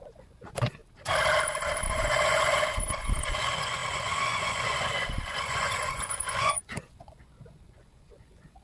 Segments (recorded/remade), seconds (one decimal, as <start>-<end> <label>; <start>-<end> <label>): 0.0-0.8 remade; 0.8-1.9 recorded; 1.9-8.6 remade